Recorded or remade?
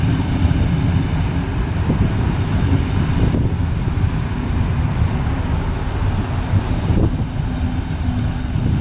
recorded